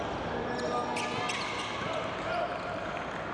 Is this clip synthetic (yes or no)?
no